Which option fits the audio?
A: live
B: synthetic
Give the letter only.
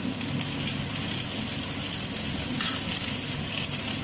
A